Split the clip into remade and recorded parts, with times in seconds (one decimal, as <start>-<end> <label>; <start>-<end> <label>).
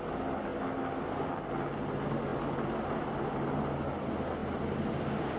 0.0-5.4 recorded